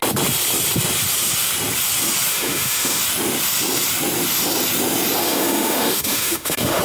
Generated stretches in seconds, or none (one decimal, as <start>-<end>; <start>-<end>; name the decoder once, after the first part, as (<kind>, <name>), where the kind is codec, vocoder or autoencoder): 2.3-3.0 (autoencoder, DAC-VAE); 5.2-6.8

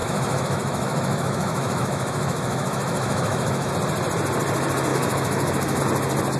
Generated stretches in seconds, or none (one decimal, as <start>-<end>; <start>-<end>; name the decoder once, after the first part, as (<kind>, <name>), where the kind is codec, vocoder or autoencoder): 0.0-3.7 (autoencoder, DAC-VAE); 4.9-5.8